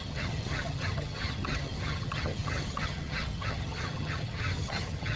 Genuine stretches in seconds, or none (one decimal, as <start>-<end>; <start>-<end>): none